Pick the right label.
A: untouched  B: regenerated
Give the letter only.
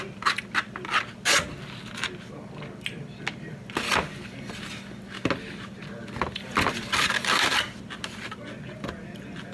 A